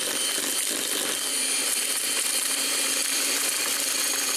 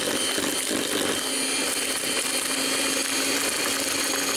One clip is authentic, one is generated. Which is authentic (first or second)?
second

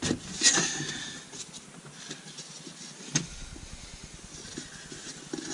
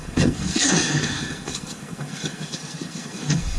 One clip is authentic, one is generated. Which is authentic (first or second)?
first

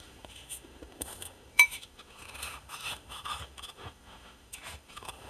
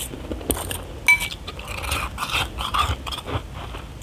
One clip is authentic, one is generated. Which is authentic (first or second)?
second